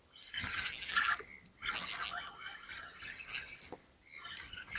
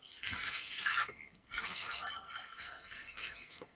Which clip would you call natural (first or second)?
first